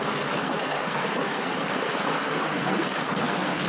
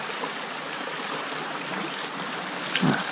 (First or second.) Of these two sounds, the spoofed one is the first